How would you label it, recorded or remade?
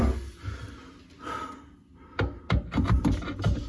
recorded